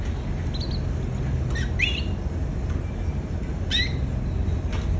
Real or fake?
real